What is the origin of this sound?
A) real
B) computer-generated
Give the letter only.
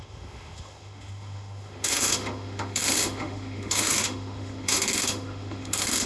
B